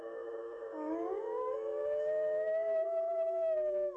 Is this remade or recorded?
remade